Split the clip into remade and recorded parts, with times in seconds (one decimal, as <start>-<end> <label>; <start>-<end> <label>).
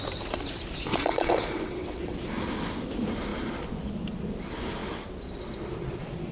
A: 0.0-0.9 recorded; 0.9-2.3 remade; 2.3-6.3 recorded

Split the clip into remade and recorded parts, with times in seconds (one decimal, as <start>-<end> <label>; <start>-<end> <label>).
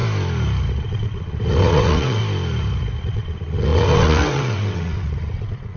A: 0.0-0.7 recorded; 0.7-2.2 remade; 2.2-3.0 recorded; 3.0-5.8 remade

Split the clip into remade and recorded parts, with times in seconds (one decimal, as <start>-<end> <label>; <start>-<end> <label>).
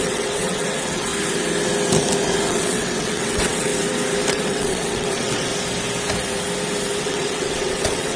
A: 0.0-1.1 remade; 1.1-2.5 recorded; 2.5-3.7 remade; 3.7-4.3 recorded; 4.3-5.5 remade; 5.5-7.0 recorded; 7.0-8.2 remade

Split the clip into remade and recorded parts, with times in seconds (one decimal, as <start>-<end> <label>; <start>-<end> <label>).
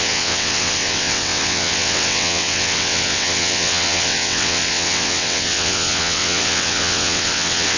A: 0.0-7.8 remade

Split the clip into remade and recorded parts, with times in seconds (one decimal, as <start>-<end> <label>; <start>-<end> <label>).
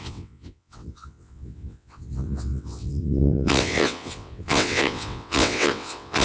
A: 0.0-6.2 remade